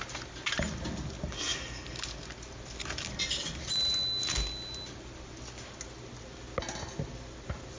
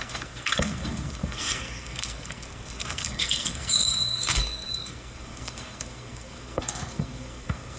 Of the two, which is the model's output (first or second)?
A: second